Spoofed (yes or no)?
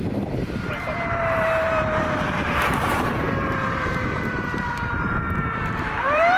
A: yes